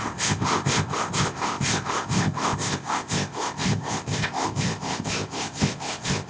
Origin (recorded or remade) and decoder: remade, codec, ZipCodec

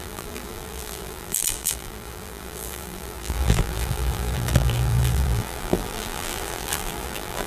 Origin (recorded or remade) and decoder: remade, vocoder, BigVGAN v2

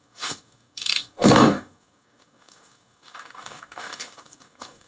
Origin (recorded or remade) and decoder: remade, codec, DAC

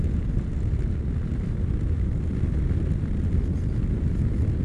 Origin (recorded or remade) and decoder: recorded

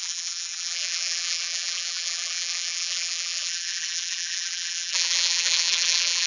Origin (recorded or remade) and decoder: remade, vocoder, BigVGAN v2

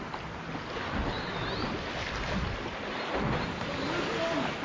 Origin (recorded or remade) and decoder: recorded